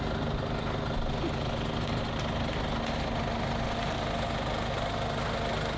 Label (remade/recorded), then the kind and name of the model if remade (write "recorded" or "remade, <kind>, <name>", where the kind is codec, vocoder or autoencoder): recorded